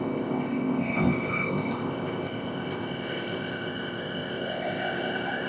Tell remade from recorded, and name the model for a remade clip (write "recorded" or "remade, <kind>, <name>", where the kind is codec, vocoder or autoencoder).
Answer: remade, codec, ZipCodec